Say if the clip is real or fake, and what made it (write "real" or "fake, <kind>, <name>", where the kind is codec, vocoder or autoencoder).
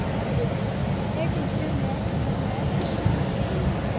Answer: real